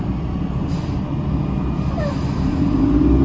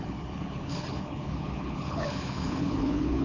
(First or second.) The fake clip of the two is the second